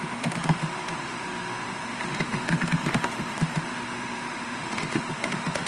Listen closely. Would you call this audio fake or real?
fake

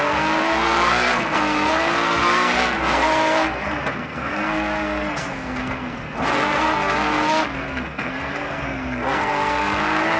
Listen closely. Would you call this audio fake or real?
fake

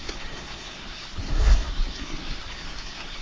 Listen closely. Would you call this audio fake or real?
fake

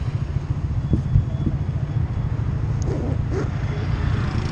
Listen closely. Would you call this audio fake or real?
real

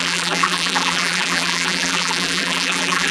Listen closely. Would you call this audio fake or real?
fake